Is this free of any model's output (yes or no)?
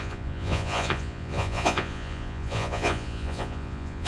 no